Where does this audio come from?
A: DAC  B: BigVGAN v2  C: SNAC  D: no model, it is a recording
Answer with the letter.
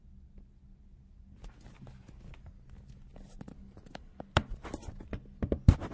D